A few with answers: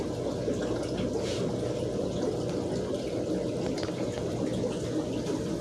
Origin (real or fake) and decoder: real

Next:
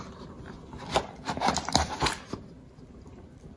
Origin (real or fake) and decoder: fake, vocoder, BigVGAN v2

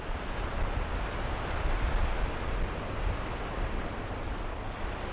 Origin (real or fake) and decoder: real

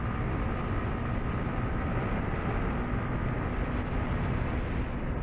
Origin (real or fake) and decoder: real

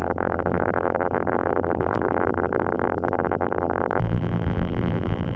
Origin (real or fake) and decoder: fake, vocoder, BigVGAN v2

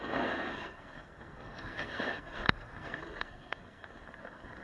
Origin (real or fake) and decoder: fake, codec, SNAC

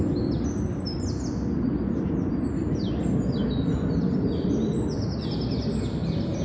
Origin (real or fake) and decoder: real